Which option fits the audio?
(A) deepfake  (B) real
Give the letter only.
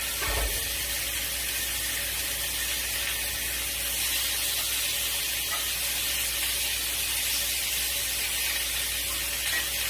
B